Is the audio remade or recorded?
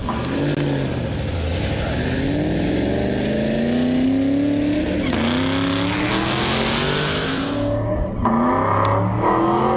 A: recorded